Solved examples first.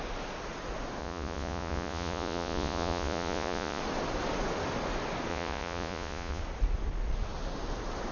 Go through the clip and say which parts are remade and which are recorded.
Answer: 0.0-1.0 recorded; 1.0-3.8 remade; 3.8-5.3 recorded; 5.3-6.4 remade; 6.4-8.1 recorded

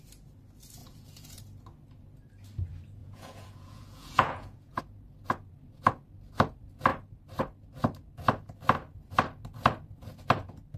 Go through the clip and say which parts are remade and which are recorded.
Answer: 0.0-0.8 recorded; 0.8-1.4 remade; 1.4-3.0 recorded; 3.0-4.8 remade; 4.8-10.8 recorded

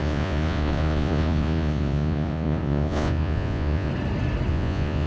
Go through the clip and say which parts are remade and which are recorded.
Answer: 0.0-3.9 remade; 3.9-4.5 recorded; 4.5-5.1 remade

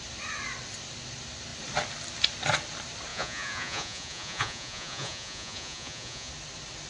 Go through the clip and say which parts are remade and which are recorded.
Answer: 0.0-3.1 recorded; 3.1-6.3 remade; 6.3-6.9 recorded

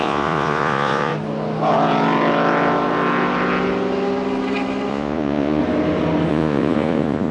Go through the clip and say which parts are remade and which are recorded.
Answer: 0.0-1.1 remade; 1.1-4.9 recorded; 4.9-5.6 remade; 5.6-6.3 recorded; 6.3-7.3 remade